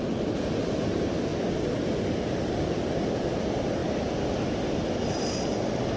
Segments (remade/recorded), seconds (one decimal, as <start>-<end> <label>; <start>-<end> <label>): 0.0-6.0 recorded